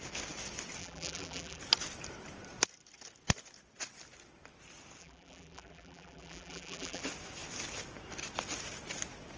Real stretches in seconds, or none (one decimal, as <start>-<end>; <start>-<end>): 0.0-0.8; 1.6-5.0; 7.0-9.4